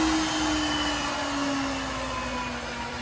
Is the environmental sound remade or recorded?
recorded